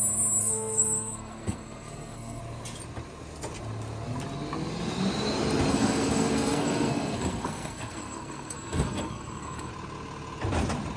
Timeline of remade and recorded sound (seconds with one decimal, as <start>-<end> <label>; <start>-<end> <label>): 0.0-0.4 recorded; 0.4-2.4 remade; 2.4-5.7 recorded; 5.7-9.7 remade; 9.7-11.0 recorded